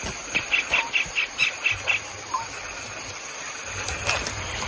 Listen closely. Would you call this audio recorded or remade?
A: recorded